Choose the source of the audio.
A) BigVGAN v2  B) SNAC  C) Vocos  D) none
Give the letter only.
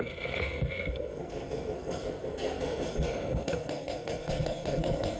B